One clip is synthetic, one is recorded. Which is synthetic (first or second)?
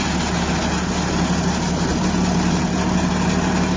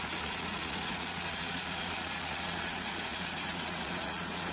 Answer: second